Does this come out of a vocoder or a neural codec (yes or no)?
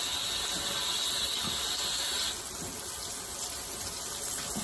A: no